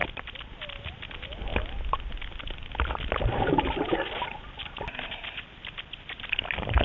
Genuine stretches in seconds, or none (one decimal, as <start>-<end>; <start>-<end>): 0.0-6.8